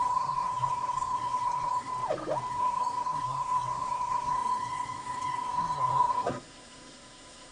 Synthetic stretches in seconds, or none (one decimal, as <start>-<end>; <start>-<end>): 0.0-1.9; 2.5-7.5